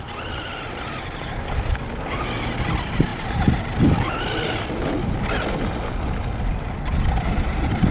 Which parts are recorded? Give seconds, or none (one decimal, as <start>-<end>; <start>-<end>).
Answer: 0.0-7.9